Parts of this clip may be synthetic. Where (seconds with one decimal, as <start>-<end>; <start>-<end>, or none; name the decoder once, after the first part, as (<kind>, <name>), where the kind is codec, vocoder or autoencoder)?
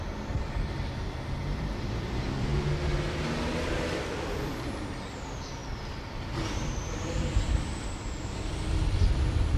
0.0-2.5 (vocoder, BigVGAN v2); 3.7-9.6